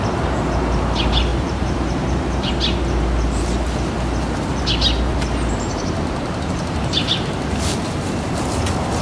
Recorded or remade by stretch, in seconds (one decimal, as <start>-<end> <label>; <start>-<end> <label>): 0.0-1.3 recorded; 1.3-2.5 remade; 2.5-5.1 recorded; 5.1-7.1 remade; 7.1-9.0 recorded